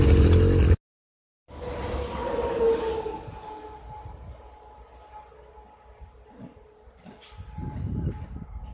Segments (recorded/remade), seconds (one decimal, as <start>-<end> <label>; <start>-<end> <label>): 0.0-8.7 recorded

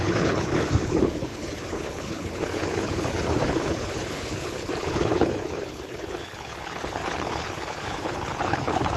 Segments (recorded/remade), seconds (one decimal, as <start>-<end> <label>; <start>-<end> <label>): 0.0-9.0 remade

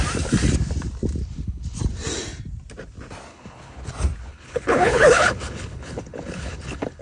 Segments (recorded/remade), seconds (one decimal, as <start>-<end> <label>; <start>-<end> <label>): 0.0-1.2 recorded; 1.2-1.8 remade; 1.8-3.3 recorded; 3.3-3.9 remade; 3.9-4.3 recorded; 4.3-7.0 remade

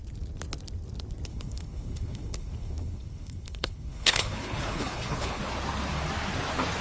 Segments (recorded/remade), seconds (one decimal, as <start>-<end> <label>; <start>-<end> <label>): 0.0-1.3 recorded; 1.3-5.4 remade; 5.4-6.8 recorded

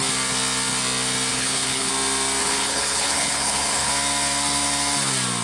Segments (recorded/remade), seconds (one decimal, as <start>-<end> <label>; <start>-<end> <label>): 0.0-1.3 recorded; 1.3-1.9 remade; 1.9-2.4 recorded; 2.4-3.9 remade; 3.9-5.4 recorded

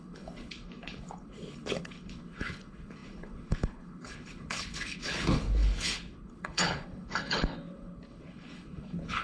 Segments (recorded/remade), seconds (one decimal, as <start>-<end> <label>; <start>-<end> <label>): 0.0-9.2 remade

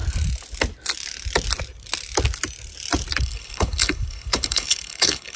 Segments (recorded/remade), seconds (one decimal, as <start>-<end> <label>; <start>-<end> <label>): 0.0-3.2 recorded; 3.2-5.4 remade